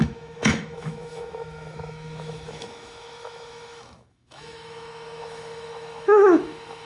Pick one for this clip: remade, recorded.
remade